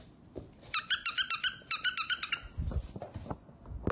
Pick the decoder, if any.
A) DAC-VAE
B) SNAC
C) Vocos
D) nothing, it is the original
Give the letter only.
D